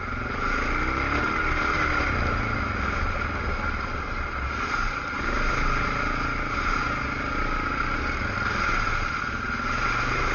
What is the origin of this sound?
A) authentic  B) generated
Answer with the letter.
A